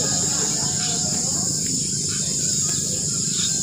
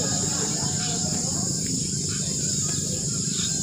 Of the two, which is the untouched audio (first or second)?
first